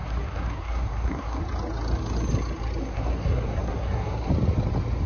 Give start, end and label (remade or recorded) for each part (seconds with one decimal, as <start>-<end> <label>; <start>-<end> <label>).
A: 0.0-1.4 remade; 1.4-2.8 recorded; 2.8-4.3 remade; 4.3-5.1 recorded